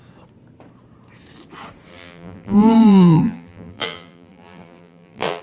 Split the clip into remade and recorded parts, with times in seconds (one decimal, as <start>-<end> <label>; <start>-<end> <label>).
0.0-1.9 recorded; 1.9-5.4 remade